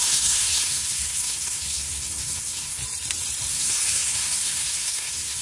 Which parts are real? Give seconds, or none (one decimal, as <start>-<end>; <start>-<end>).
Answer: 2.8-3.5